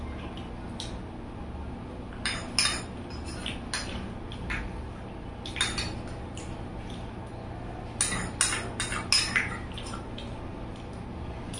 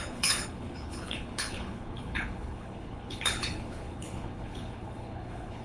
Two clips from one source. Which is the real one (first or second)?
first